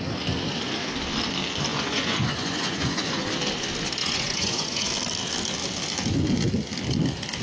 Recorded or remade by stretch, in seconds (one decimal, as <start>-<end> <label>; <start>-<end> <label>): 0.0-1.7 recorded; 1.7-3.3 remade; 3.3-4.0 recorded; 4.0-4.9 remade; 4.9-7.4 recorded